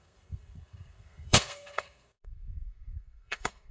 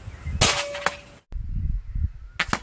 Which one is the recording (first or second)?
second